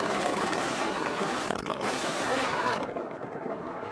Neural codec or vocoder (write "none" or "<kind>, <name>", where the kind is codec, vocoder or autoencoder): codec, SNAC